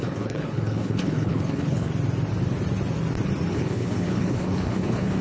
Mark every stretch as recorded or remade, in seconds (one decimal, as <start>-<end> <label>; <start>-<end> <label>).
0.0-1.9 remade; 1.9-3.5 recorded; 3.5-5.2 remade